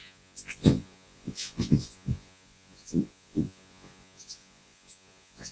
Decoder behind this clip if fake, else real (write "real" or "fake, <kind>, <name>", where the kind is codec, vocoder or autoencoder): fake, vocoder, Vocos